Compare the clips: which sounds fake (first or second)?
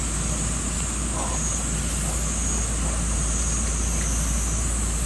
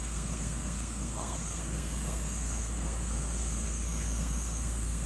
second